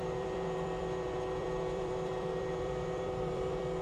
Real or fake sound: fake